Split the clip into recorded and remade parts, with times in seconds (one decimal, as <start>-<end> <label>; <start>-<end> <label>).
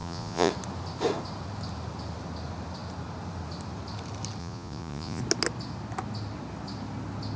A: 0.0-0.5 remade; 0.5-4.4 recorded; 4.4-5.2 remade; 5.2-7.4 recorded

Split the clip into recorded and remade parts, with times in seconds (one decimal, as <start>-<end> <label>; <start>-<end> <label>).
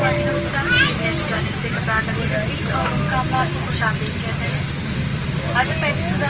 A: 0.0-6.3 recorded